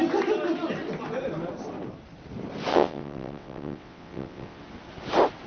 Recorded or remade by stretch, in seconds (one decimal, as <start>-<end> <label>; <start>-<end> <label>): 0.0-2.7 recorded; 2.7-4.6 remade; 4.6-5.5 recorded